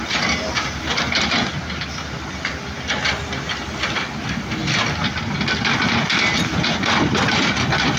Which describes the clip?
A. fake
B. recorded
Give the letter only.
B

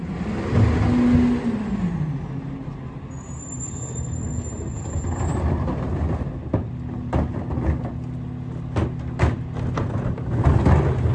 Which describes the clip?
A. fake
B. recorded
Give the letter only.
B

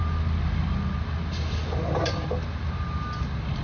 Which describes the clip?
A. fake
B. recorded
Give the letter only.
B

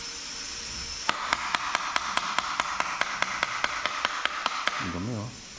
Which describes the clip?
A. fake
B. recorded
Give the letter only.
B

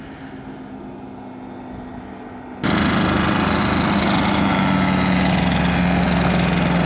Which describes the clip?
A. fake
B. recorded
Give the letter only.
B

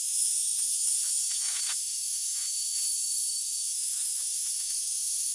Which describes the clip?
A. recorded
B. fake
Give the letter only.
B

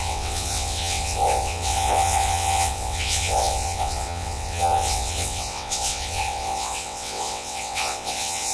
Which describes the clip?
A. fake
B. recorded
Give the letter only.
A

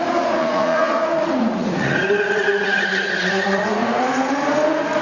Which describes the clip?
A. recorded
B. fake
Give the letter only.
B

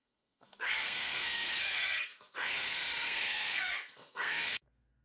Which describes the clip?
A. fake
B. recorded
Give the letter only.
A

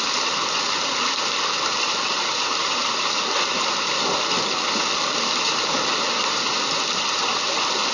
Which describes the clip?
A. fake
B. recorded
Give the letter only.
B